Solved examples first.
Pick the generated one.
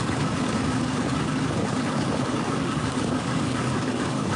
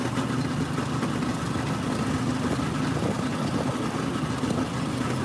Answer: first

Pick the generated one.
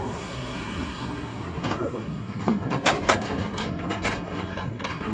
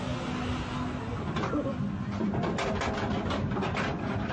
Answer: first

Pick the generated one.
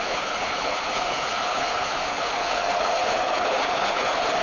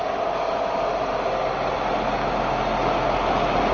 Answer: first